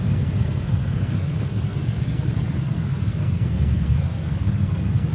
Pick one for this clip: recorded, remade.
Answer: remade